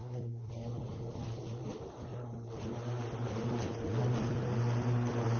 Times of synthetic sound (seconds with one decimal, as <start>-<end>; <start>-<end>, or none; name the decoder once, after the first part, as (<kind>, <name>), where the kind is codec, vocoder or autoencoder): 0.0-0.5 (codec, SNAC)